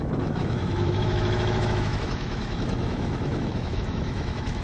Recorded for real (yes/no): no